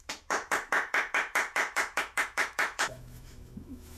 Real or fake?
fake